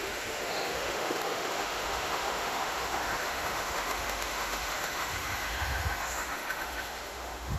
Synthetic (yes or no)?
yes